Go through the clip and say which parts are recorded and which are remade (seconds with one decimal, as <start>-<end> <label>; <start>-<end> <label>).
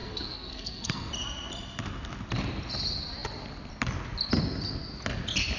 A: 0.0-1.1 remade; 1.1-5.6 recorded